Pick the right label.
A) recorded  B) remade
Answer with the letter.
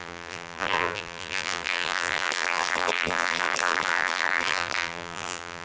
B